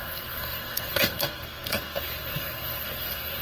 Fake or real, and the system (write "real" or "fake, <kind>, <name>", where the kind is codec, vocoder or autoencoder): fake, codec, SNAC